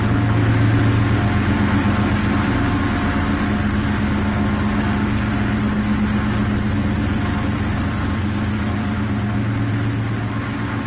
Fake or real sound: real